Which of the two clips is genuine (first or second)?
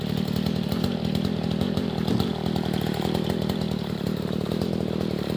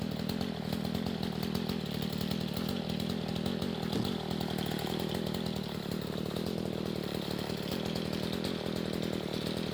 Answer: second